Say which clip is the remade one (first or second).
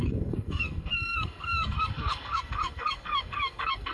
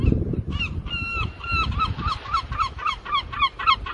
first